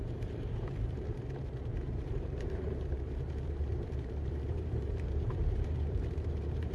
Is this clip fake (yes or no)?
yes